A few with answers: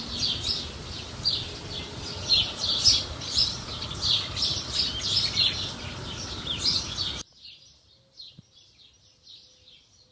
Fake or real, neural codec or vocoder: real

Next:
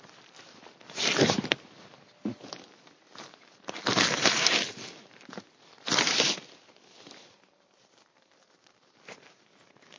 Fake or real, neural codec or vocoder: real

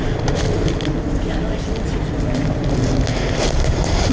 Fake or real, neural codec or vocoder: real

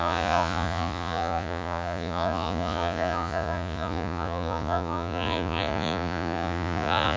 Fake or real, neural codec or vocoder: fake, vocoder, Vocos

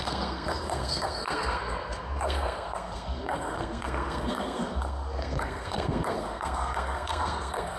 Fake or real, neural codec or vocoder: fake, codec, SNAC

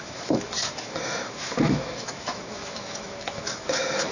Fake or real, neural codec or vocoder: fake, autoencoder, DAC-VAE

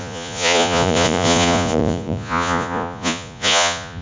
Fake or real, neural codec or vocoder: fake, vocoder, Vocos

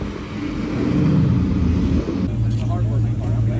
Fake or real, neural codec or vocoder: real